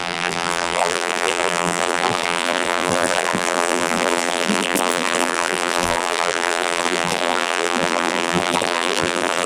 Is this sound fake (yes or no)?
yes